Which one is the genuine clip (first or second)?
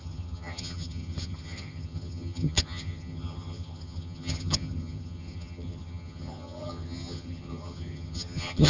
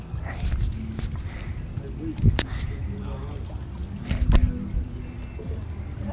second